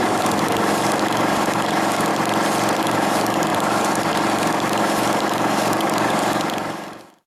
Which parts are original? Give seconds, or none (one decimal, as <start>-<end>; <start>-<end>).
2.1-2.8